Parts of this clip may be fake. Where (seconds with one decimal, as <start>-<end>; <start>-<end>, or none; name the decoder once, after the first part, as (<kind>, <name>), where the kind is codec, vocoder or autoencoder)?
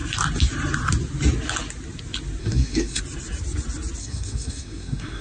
2.4-3.0 (codec, SNAC); 4.0-5.2